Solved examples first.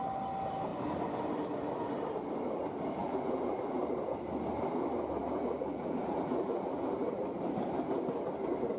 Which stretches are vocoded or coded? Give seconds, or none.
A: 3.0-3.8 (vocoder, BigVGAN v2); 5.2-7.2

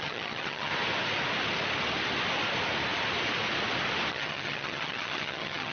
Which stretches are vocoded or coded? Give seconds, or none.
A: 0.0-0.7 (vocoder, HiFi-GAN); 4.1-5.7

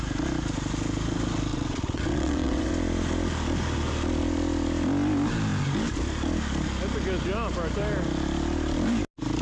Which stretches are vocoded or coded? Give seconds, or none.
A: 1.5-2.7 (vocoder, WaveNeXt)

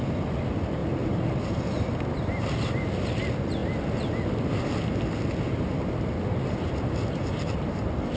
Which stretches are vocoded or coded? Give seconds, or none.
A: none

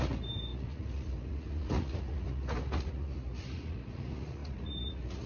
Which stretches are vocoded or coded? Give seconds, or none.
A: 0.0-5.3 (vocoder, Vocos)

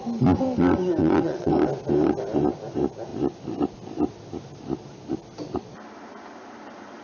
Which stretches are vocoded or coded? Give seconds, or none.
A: 1.0-1.5 (vocoder, WaveNeXt)

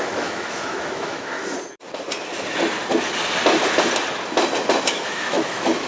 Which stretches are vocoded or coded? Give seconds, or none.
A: 0.0-1.4 (autoencoder, DAC-VAE); 4.9-5.9